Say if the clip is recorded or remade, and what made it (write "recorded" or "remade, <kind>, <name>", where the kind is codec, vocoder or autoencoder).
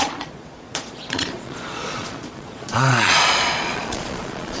remade, vocoder, Vocos